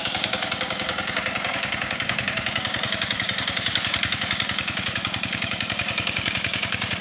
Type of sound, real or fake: fake